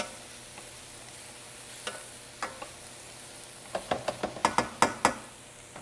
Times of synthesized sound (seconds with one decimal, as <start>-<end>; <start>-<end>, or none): none

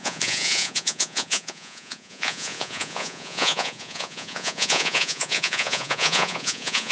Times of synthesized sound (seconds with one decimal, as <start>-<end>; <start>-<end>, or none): 0.0-6.9

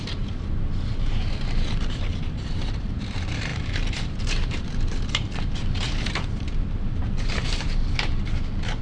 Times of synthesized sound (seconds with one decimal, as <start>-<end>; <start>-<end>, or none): 0.0-8.8

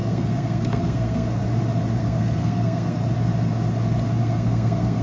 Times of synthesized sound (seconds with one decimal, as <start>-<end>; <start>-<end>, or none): 0.0-1.4; 2.0-3.0; 4.2-5.0

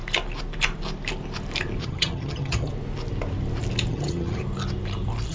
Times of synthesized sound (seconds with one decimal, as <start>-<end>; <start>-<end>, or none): 1.8-2.7; 3.9-4.4

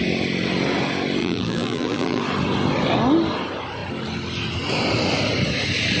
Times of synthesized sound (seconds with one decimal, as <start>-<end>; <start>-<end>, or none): 1.2-2.2

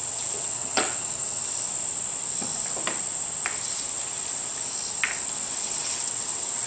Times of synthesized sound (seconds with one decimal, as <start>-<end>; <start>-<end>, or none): 0.0-1.4; 3.6-4.0; 5.6-6.7